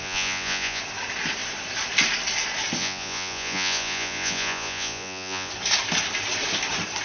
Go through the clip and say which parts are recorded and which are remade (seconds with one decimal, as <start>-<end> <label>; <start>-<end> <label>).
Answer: 0.0-0.8 remade; 0.8-2.8 recorded; 2.8-5.5 remade; 5.5-7.0 recorded